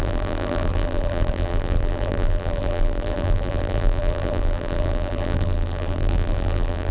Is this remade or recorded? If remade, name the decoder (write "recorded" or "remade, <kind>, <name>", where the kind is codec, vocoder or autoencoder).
remade, vocoder, BigVGAN v2